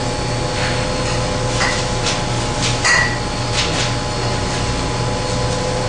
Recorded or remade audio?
recorded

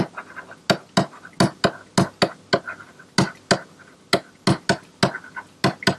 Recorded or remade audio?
recorded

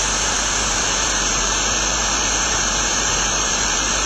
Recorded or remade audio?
remade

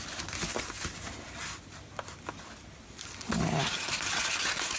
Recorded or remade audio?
recorded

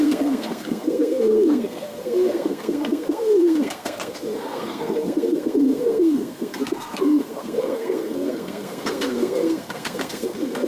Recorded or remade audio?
remade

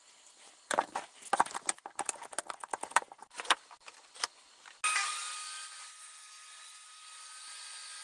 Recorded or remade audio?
recorded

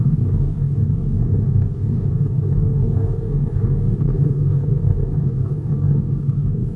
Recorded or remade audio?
remade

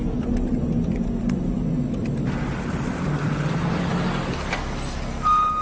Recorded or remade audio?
recorded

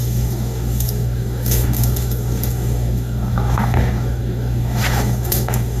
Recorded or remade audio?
remade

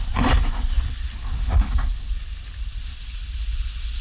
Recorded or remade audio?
recorded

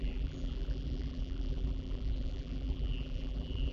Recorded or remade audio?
remade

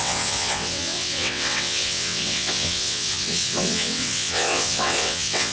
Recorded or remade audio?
remade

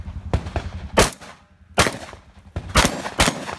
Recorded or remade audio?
recorded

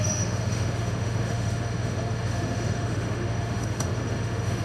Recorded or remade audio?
remade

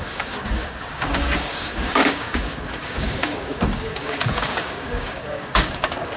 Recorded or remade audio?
remade